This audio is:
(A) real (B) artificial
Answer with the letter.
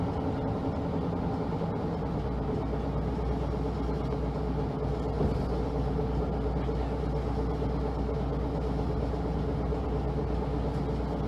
A